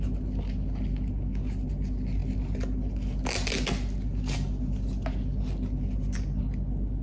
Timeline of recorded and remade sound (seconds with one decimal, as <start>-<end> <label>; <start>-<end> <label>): 0.0-7.0 recorded